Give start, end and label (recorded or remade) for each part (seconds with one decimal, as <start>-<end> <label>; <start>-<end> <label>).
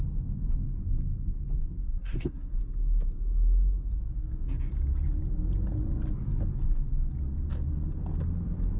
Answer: 0.0-1.9 recorded; 1.9-2.6 remade; 2.6-8.8 recorded